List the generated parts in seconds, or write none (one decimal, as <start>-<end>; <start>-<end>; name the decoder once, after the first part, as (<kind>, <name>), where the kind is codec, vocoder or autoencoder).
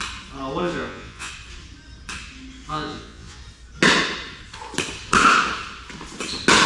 0.6-1.3 (vocoder, Vocos); 2.7-3.4